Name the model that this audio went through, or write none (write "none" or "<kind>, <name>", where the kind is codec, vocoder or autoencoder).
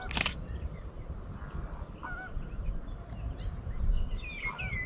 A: none